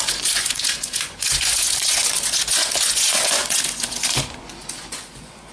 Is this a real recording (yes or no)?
no